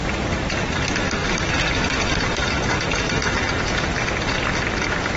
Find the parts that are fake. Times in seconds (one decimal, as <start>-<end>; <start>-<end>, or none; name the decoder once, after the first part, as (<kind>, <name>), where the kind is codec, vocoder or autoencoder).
1.2-3.3 (vocoder, BigVGAN v2)